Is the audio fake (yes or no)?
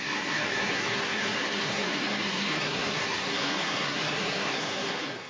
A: yes